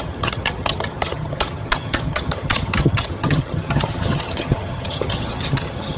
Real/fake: fake